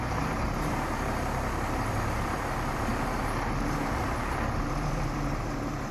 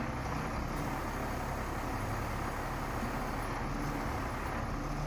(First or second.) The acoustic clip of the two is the second